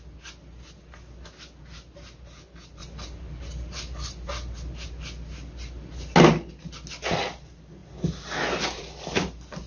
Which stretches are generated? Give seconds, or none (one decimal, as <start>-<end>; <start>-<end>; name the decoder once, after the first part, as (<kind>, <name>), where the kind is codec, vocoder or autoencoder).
none